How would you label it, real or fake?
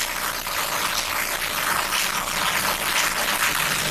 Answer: real